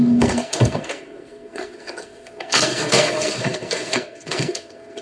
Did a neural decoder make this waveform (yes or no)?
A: yes